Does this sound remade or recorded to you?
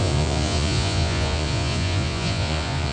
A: remade